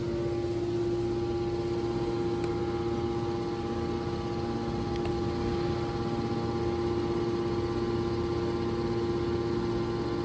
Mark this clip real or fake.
real